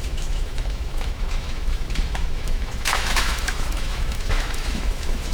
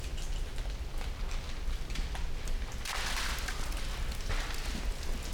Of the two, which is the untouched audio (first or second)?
second